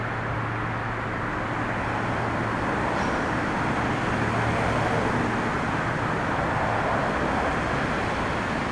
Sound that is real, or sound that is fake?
real